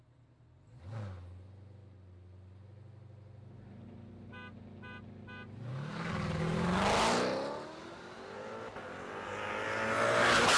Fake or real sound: real